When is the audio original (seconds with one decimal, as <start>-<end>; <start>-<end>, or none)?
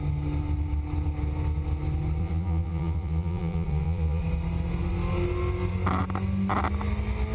0.0-2.2; 4.2-7.3